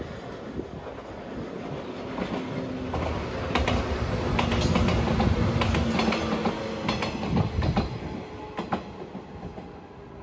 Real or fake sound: real